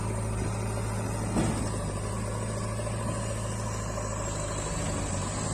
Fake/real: real